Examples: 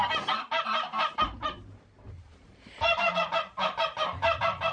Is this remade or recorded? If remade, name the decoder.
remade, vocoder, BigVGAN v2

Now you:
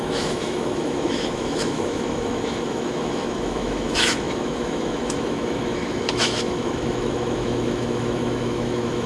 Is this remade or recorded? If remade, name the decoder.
remade, autoencoder, DAC-VAE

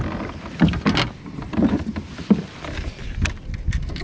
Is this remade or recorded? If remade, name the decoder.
recorded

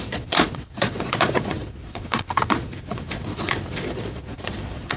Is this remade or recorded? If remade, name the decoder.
remade, vocoder, Vocos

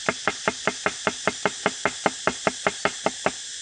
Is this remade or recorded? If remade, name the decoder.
recorded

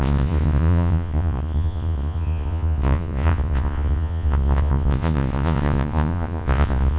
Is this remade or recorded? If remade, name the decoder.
remade, vocoder, Vocos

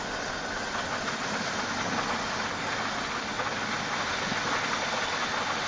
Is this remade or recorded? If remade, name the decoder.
recorded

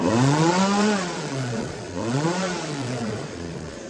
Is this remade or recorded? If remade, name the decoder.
remade, vocoder, Vocos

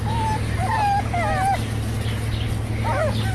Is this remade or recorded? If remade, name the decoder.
recorded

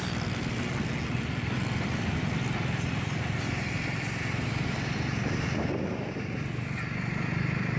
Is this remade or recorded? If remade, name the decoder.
recorded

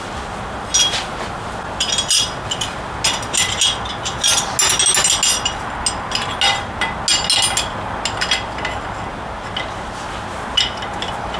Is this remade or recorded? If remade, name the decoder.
recorded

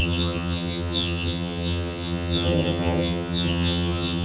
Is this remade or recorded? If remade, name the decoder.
remade, vocoder, HiFi-GAN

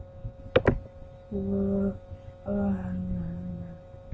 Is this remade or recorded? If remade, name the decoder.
recorded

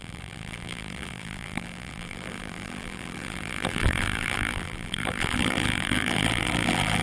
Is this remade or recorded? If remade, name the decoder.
remade, vocoder, BigVGAN v2